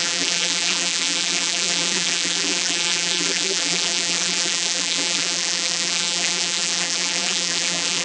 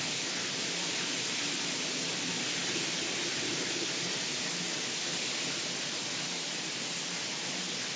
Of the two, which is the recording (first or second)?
second